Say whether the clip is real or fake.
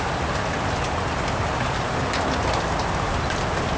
real